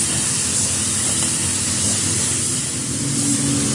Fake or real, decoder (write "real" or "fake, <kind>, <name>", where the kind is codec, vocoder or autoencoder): real